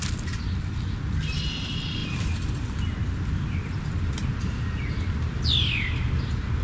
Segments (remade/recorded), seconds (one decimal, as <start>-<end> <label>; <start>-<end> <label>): 0.0-6.6 recorded